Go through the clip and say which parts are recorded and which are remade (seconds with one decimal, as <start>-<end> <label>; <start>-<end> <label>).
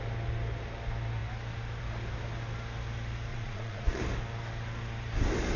0.0-3.3 recorded; 3.3-4.0 remade; 4.0-5.6 recorded